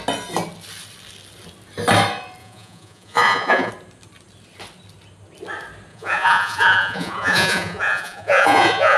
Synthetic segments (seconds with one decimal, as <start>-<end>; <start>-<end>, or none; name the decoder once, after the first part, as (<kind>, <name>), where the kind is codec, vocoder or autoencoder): 2.4-3.7 (vocoder, Vocos); 5.9-9.0

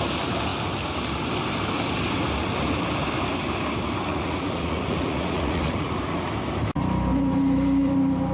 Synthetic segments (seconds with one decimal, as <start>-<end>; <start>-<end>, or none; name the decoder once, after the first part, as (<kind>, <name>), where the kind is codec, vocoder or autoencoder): 4.1-6.3 (vocoder, Vocos)

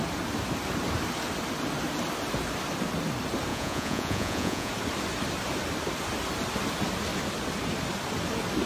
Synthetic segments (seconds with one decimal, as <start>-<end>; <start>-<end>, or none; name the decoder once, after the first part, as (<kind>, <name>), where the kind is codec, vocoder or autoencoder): 3.5-4.7 (vocoder, Vocos)

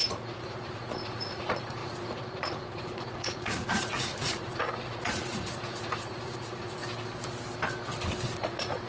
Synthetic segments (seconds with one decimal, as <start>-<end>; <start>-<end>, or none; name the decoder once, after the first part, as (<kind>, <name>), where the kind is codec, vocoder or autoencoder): 0.0-6.8 (vocoder, Vocos); 8.3-8.9

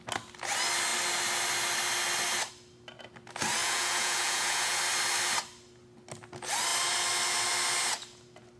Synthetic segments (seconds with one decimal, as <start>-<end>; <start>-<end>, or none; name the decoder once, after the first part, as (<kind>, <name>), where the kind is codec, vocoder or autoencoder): 3.6-4.8 (vocoder, Vocos)

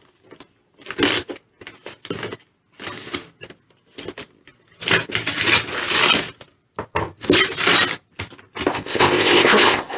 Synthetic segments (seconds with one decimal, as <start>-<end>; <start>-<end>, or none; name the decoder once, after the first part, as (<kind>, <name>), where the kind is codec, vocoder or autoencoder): 8.7-10.0 (codec, ZipCodec)

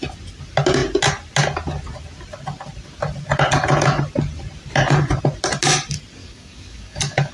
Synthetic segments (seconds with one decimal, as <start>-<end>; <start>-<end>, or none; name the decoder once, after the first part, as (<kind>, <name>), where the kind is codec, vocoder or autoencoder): 6.2-7.3 (codec, DAC)

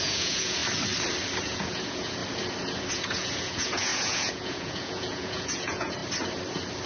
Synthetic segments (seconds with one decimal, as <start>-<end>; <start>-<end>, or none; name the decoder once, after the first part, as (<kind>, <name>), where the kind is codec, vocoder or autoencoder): 0.0-0.6 (vocoder, Vocos); 1.4-2.2; 2.9-6.0